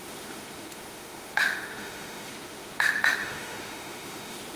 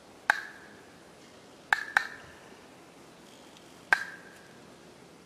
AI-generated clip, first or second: first